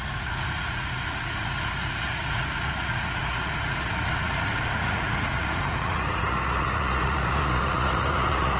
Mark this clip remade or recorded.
remade